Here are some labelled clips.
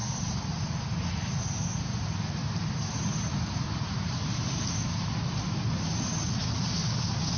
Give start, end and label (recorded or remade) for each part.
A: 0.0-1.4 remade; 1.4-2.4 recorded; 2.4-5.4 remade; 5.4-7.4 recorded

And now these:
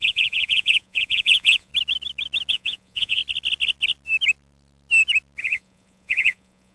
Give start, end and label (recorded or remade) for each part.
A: 0.0-1.7 remade; 1.7-2.5 recorded; 2.5-3.2 remade; 3.2-5.4 recorded; 5.4-6.7 remade

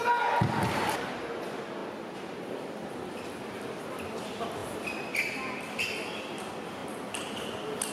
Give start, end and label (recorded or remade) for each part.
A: 0.0-7.9 recorded